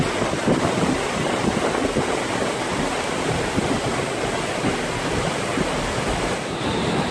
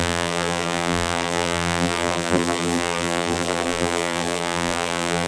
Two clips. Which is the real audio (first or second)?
first